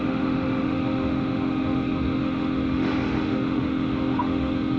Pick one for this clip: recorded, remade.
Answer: remade